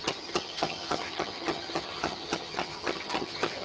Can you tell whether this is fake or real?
fake